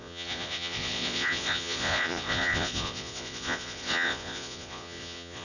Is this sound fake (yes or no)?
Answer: yes